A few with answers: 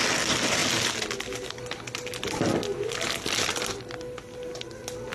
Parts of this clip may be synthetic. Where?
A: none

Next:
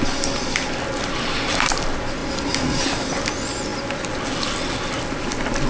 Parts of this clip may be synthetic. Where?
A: 3.7-5.0 (vocoder, BigVGAN v2)

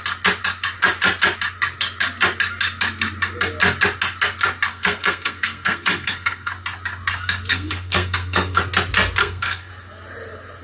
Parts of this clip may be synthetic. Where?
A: 4.7-6.5 (codec, SNAC); 7.5-8.6; 9.2-9.7

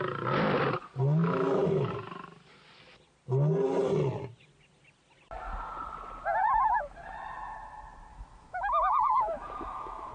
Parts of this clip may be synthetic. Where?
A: 1.2-1.9 (autoencoder, DAC-VAE); 8.1-10.1

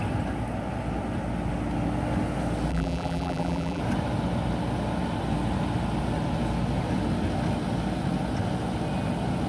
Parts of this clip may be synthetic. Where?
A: 2.7-3.8 (vocoder, BigVGAN v2)